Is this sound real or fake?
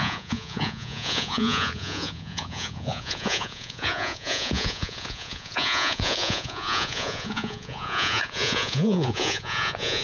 fake